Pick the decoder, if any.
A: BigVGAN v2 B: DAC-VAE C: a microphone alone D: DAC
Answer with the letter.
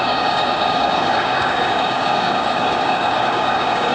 D